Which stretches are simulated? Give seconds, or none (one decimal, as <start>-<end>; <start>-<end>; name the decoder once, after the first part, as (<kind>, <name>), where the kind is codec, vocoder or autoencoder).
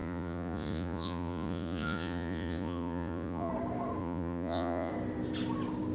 0.0-3.5 (vocoder, Vocos); 4.0-4.9